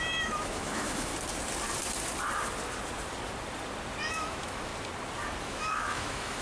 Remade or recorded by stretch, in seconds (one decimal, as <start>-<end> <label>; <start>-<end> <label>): 0.0-1.1 remade; 1.1-4.1 recorded; 4.1-4.7 remade; 4.7-5.4 recorded; 5.4-6.4 remade